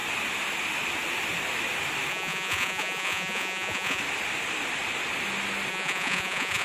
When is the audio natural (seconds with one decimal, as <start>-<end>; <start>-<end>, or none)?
0.0-2.1; 4.0-5.7